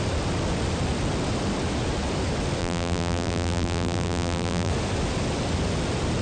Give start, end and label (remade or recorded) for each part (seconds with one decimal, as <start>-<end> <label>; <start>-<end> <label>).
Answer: 0.0-2.6 recorded; 2.6-4.7 remade; 4.7-6.2 recorded